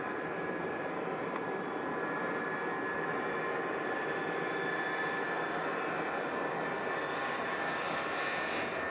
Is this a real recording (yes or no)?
yes